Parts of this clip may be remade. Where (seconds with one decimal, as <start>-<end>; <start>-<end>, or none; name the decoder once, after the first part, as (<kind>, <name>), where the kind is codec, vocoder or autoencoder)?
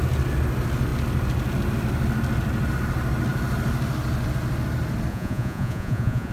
5.1-6.3 (vocoder, Vocos)